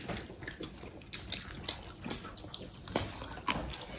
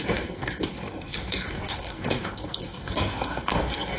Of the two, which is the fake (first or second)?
second